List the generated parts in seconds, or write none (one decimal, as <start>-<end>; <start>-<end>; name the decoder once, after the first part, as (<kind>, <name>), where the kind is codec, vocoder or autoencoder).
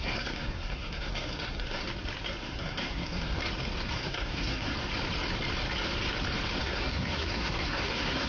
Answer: 0.0-1.8 (codec, SNAC); 2.4-3.4; 3.9-4.7; 6.6-8.3